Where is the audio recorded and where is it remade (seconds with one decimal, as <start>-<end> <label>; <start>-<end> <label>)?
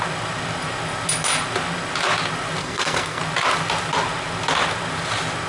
0.0-2.6 recorded; 2.6-3.2 remade; 3.2-5.5 recorded